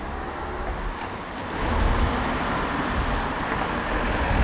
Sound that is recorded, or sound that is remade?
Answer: recorded